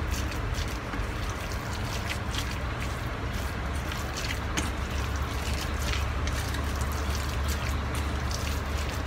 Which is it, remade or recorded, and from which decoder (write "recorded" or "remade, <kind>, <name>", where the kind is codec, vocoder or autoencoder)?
recorded